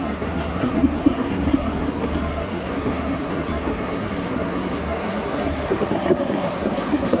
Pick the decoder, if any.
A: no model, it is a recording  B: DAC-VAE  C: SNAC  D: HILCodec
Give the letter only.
C